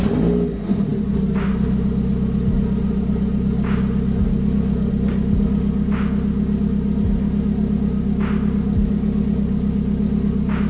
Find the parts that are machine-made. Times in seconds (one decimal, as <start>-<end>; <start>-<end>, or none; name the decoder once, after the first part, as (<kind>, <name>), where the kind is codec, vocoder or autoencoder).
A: none